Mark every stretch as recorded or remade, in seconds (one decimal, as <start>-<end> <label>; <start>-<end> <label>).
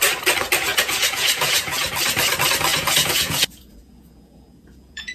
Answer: 0.0-0.7 recorded; 0.7-1.9 remade; 1.9-2.7 recorded; 2.7-5.1 remade